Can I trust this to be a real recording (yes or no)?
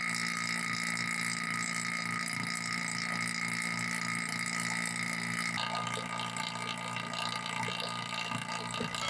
yes